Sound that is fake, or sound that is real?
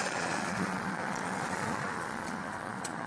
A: fake